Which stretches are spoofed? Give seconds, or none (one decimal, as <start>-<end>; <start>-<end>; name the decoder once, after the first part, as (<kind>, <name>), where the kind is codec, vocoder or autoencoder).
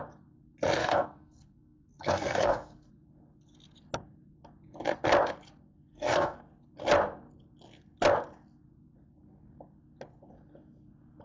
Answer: 0.8-2.9 (codec, SNAC); 5.9-6.4